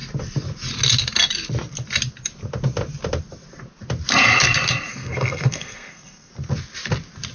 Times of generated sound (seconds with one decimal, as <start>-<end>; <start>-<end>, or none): 4.9-6.3